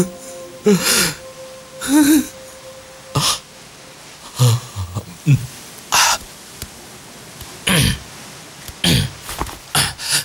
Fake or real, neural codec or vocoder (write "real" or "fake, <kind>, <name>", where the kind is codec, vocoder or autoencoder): real